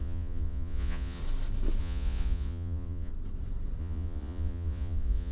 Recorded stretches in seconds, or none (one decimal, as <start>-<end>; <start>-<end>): 1.2-1.8; 3.1-3.8